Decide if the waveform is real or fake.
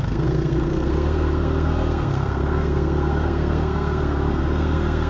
fake